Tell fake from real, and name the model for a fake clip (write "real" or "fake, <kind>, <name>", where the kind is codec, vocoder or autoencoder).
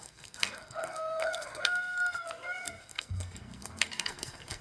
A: fake, codec, SNAC